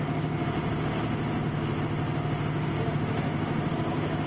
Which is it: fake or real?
real